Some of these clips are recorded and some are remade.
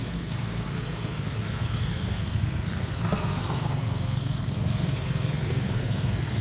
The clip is remade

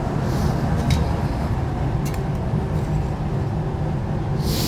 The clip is recorded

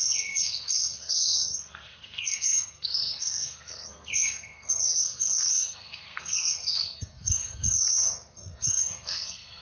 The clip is remade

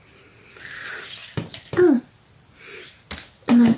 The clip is recorded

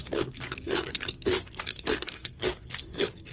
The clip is remade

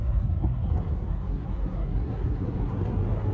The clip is remade